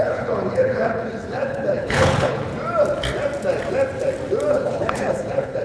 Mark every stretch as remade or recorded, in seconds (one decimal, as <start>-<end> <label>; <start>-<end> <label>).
0.0-2.5 remade; 2.5-4.5 recorded; 4.5-5.6 remade